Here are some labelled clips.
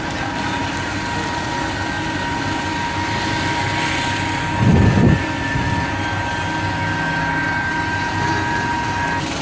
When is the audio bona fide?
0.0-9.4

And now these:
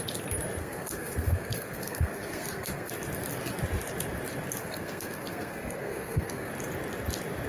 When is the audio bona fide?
0.0-0.6; 2.9-4.6; 6.5-7.5